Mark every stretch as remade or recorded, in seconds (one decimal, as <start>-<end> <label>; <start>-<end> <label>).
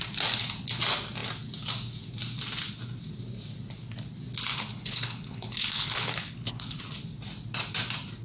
0.0-4.5 recorded; 4.5-6.8 remade; 6.8-8.2 recorded